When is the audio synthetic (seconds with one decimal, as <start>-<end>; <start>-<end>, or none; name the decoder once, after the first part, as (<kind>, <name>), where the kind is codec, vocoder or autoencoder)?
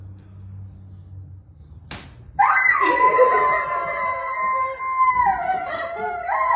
1.6-2.4 (vocoder, BigVGAN v2); 4.1-5.1